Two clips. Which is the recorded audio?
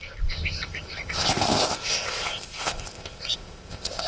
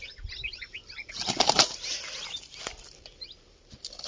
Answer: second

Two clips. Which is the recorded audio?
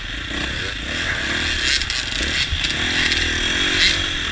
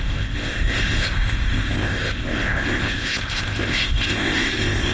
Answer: first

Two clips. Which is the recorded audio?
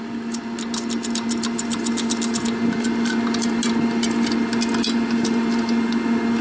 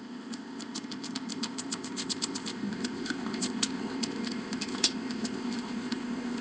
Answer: first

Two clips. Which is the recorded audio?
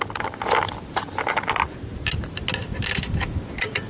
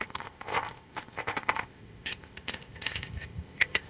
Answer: first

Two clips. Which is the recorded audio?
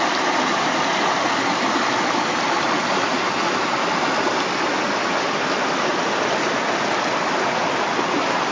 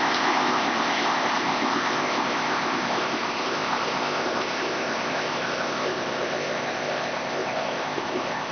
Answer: first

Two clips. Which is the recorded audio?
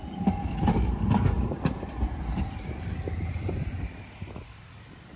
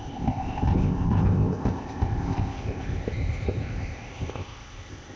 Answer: first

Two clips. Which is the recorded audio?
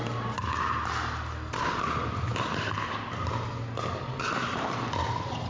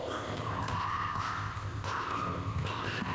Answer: first